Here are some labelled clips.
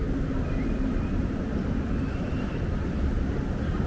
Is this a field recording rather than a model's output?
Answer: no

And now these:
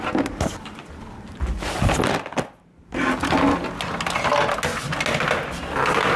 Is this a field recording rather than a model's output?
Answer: yes